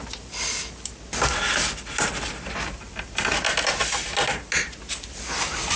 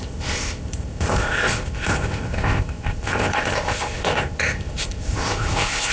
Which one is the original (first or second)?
first